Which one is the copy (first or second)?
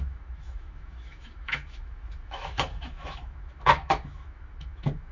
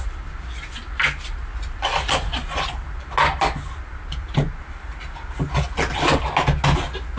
first